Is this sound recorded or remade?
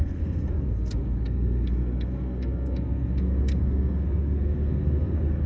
remade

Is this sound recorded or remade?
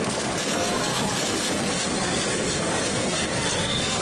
remade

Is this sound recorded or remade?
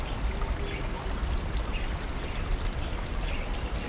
recorded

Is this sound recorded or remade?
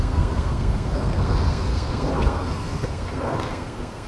remade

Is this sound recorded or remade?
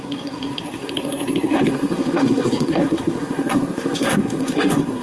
remade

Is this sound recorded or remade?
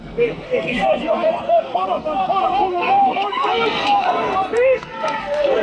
remade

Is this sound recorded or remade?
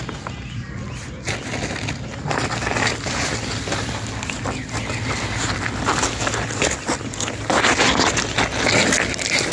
recorded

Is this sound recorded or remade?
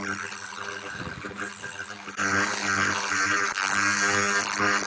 recorded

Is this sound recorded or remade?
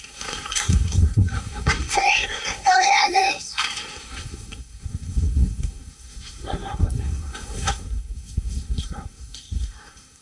remade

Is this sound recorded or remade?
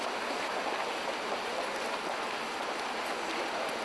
recorded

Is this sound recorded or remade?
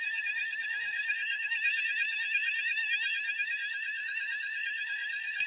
remade